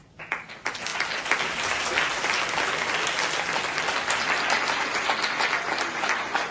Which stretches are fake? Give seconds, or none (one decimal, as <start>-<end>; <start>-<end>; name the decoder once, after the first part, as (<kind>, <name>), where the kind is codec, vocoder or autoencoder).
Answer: none